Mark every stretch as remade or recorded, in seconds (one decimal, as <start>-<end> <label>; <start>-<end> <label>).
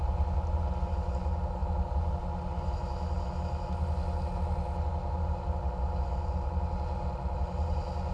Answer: 0.0-8.1 recorded